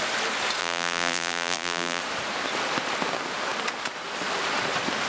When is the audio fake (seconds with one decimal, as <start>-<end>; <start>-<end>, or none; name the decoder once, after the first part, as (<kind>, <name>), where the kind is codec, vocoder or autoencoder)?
0.6-2.0 (vocoder, BigVGAN v2)